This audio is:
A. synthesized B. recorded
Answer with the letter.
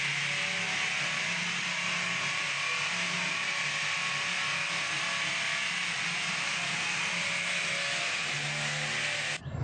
B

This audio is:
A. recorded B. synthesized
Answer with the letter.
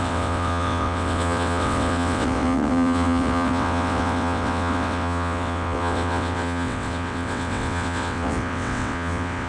B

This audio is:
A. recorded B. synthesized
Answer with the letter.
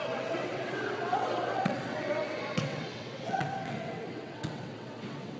B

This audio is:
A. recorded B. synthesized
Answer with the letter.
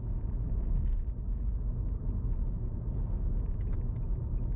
A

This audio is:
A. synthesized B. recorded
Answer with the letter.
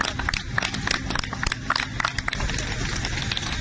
B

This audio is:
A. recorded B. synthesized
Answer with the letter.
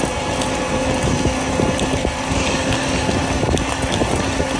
A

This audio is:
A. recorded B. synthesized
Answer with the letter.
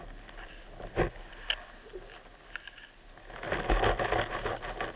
A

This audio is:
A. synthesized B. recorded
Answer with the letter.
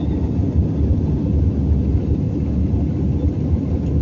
B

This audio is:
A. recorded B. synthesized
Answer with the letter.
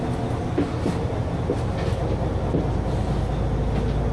A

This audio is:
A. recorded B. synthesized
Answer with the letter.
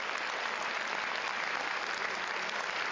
A